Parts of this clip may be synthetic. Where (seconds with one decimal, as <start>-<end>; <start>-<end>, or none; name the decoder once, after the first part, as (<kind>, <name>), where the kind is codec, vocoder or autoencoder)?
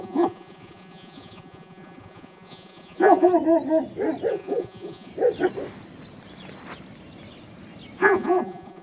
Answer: 0.0-3.3 (vocoder, Vocos); 4.3-5.1; 8.0-8.8